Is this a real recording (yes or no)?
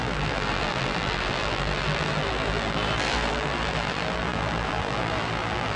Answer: no